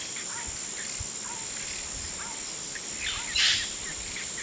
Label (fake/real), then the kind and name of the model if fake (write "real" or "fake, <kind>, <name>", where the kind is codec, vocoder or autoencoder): real